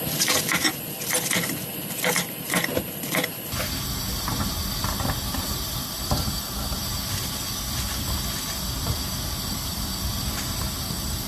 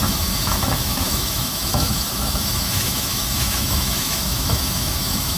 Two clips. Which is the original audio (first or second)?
first